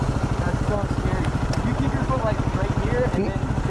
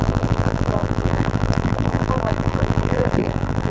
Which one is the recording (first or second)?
first